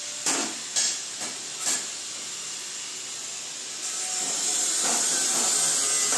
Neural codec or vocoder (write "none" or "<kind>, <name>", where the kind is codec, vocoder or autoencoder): none